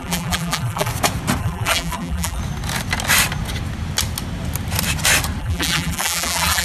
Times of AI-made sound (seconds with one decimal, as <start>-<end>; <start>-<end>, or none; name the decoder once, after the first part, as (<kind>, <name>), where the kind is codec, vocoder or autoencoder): 0.0-0.9 (vocoder, BigVGAN v2); 1.4-2.4; 5.4-6.6